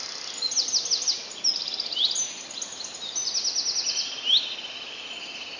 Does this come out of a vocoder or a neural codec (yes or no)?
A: no